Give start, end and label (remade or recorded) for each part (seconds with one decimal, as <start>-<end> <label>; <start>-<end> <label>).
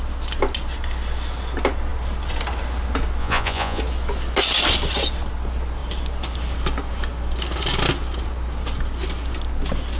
0.0-3.2 recorded; 3.2-3.8 remade; 3.8-10.0 recorded